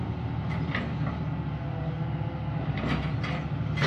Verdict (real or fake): real